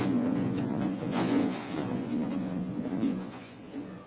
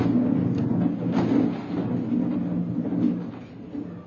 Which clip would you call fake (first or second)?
first